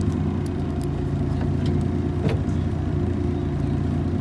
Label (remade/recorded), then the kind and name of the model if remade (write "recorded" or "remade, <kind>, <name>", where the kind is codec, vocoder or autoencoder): recorded